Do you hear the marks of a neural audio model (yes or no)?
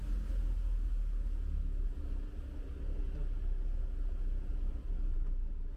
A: no